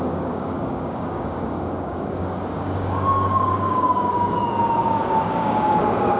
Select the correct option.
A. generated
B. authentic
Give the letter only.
A